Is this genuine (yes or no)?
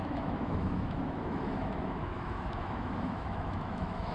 no